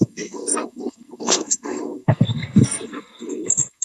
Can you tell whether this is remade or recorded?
remade